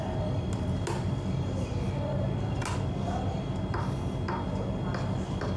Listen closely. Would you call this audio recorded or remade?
recorded